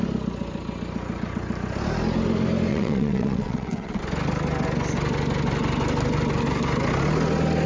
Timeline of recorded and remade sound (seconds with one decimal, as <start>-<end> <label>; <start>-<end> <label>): 0.0-2.7 recorded; 2.7-4.0 remade; 4.0-7.7 recorded